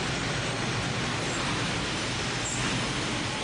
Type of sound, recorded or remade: recorded